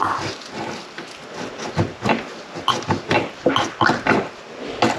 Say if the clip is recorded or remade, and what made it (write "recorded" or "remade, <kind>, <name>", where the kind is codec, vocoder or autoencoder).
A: recorded